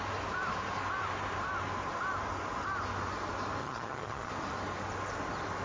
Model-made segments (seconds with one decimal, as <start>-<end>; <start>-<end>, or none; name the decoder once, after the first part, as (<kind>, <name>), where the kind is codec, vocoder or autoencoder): 3.6-4.3 (vocoder, HiFi-GAN)